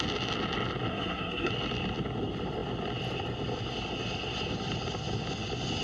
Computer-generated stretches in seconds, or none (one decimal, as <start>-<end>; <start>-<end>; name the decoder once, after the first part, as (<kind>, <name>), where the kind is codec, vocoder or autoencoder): 0.9-1.5 (codec, SNAC)